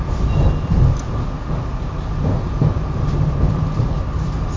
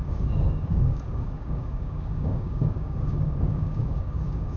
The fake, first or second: second